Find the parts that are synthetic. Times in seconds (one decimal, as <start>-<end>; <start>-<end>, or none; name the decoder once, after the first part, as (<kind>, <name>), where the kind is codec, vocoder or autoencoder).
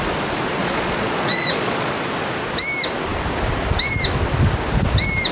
0.6-1.9 (vocoder, Vocos)